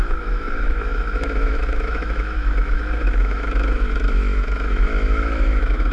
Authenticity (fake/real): fake